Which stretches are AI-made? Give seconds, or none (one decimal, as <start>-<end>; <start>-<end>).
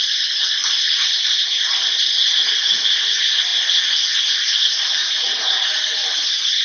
5.0-5.8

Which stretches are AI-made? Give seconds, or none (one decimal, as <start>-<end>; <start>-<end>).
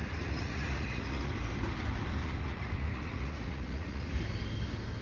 0.0-1.3; 2.2-4.1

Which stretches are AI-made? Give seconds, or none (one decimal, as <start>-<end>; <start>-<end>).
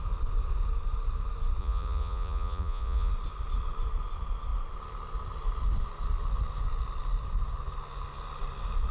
1.6-3.1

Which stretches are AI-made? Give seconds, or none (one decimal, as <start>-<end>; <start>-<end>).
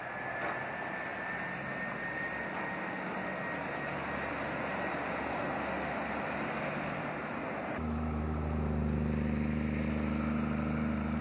none